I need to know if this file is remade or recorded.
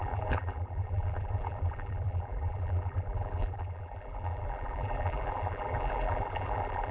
remade